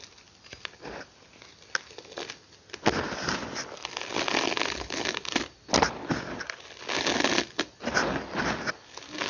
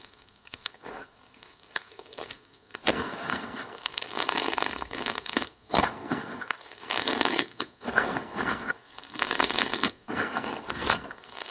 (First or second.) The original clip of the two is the first